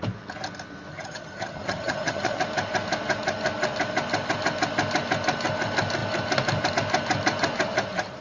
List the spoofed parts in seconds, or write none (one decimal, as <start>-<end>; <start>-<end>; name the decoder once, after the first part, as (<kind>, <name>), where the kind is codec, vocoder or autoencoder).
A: 0.9-2.4 (vocoder, HiFi-GAN)